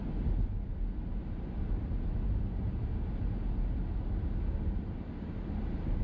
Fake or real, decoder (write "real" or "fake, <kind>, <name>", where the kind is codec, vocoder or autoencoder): real